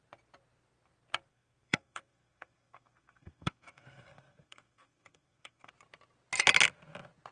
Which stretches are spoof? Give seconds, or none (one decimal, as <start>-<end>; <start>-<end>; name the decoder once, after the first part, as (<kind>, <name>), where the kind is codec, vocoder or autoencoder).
1.3-5.7 (codec, SNAC)